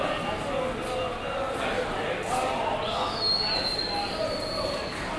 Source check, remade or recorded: recorded